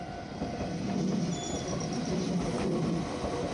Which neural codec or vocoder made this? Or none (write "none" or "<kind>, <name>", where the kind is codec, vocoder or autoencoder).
vocoder, BigVGAN v2